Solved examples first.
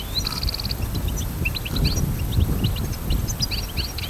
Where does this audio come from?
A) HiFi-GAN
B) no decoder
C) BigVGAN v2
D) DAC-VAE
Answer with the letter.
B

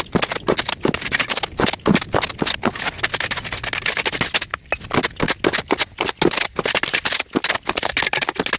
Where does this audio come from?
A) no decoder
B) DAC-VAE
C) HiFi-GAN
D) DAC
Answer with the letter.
A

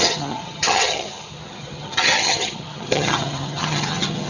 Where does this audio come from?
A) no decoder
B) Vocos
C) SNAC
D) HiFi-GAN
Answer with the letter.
D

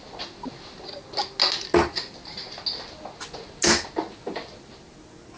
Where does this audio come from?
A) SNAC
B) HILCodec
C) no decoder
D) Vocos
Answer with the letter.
C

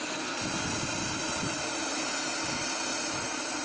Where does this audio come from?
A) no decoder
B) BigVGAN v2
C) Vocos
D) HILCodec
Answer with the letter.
A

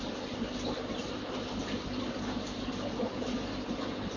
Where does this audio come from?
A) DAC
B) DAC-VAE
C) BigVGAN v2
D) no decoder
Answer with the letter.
D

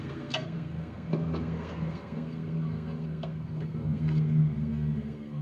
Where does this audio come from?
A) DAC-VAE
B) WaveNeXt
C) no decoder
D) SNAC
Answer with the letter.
D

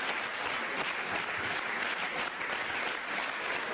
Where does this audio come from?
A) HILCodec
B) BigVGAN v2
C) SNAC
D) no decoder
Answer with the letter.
D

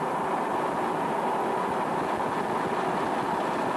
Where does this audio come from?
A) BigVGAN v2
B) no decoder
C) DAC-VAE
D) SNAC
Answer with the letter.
B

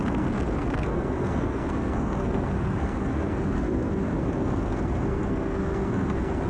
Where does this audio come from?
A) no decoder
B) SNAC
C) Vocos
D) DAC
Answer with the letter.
B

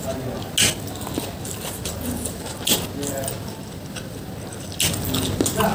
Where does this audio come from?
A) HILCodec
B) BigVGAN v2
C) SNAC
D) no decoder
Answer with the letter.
D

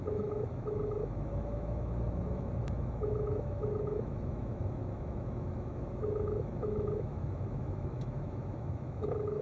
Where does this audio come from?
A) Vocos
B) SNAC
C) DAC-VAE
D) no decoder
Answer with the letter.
C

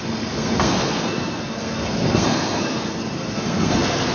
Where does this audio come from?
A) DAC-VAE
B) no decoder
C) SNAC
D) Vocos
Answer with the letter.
C